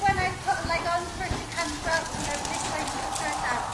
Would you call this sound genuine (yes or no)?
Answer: yes